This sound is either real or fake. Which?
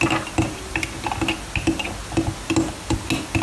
real